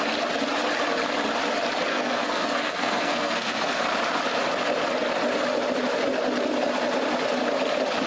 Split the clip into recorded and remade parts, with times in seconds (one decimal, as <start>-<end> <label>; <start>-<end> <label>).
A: 0.0-1.9 recorded; 1.9-3.8 remade; 3.8-8.1 recorded